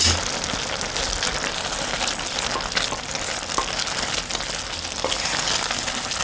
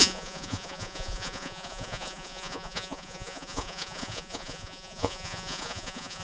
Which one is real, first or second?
first